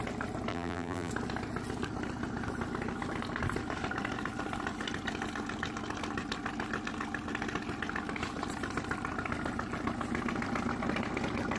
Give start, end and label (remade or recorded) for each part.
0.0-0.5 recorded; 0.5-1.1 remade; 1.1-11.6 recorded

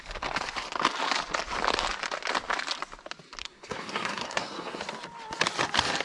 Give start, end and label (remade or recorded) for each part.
0.0-3.4 recorded; 3.4-4.8 remade; 4.8-6.0 recorded